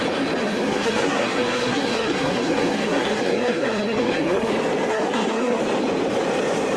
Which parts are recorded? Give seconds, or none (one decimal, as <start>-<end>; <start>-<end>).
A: 0.0-0.4; 4.5-4.9; 5.6-6.8